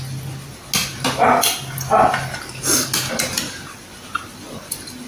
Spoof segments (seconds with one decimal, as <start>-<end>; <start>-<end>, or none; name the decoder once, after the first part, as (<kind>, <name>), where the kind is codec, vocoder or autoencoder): none